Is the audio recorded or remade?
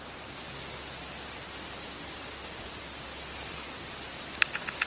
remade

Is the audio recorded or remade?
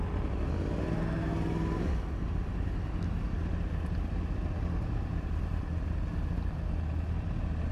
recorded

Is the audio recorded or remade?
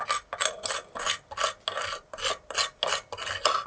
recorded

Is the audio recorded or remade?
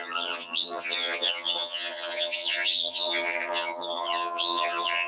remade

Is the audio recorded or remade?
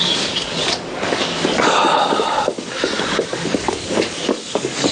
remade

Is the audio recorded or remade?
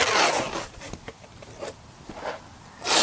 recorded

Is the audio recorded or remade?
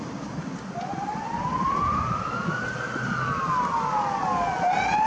recorded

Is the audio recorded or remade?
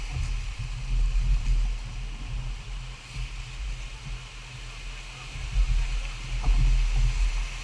recorded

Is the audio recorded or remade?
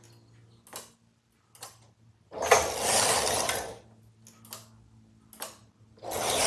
recorded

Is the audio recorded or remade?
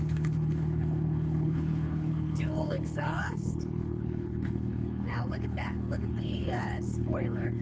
remade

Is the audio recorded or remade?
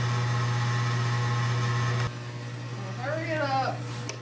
recorded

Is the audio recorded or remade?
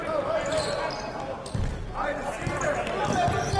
remade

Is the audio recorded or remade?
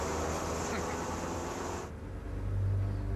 recorded